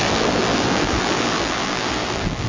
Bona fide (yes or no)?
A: no